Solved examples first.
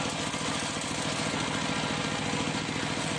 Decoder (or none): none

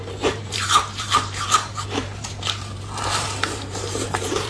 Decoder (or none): vocoder, BigVGAN v2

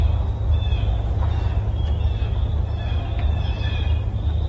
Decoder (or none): none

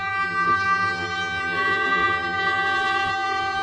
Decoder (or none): vocoder, BigVGAN v2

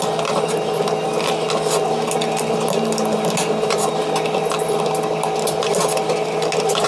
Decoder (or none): none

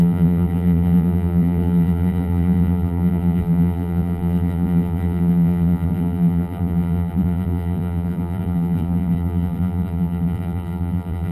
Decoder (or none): vocoder, BigVGAN v2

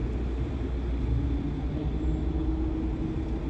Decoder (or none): none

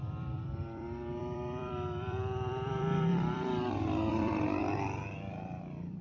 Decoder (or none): vocoder, BigVGAN v2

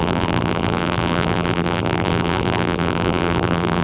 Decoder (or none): vocoder, BigVGAN v2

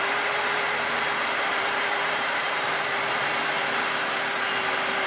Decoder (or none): vocoder, BigVGAN v2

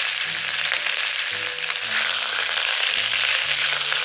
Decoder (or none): vocoder, BigVGAN v2